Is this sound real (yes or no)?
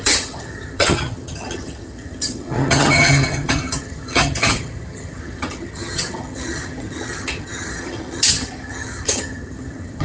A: no